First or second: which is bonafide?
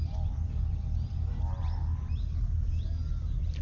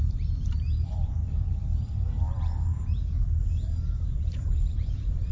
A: first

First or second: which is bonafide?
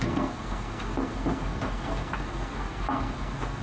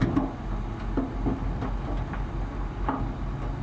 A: second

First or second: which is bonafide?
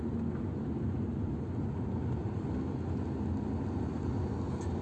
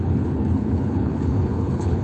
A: first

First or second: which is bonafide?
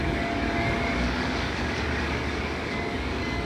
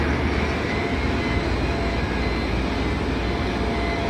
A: second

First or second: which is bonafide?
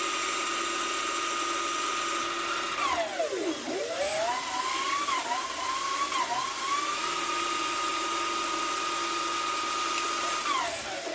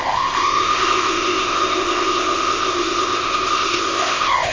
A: first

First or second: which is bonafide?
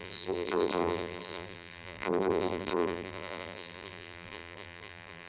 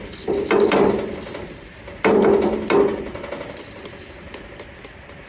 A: second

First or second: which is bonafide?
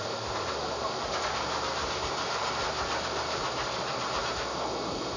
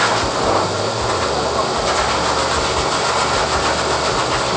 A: second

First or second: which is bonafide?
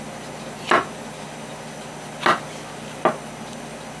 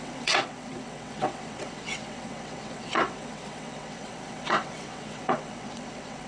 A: first